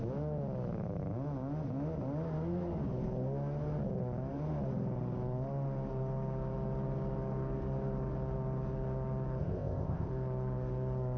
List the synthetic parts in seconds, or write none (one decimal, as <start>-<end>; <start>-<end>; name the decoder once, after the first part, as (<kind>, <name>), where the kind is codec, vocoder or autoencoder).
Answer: 9.4-10.1 (codec, ZipCodec)